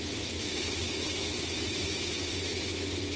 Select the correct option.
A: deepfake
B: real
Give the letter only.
A